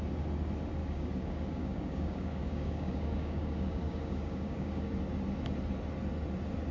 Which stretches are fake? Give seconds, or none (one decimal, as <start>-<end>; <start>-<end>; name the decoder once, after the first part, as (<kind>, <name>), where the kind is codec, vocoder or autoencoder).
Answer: 0.8-4.8 (codec, DAC)